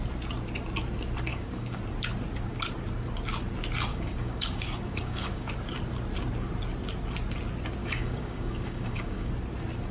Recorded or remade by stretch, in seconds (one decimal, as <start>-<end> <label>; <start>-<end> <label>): 0.0-1.3 recorded; 1.3-1.8 remade; 1.8-3.9 recorded; 3.9-5.5 remade; 5.5-7.8 recorded; 7.8-9.3 remade; 9.3-9.9 recorded